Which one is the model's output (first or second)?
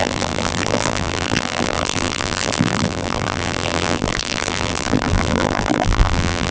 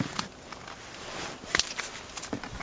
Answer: first